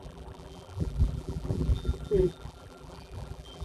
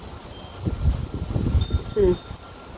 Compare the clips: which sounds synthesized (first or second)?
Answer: first